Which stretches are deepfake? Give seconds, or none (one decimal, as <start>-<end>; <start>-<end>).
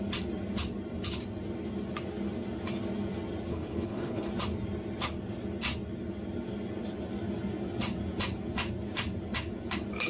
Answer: 3.5-4.3